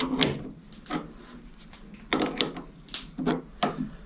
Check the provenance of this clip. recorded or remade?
recorded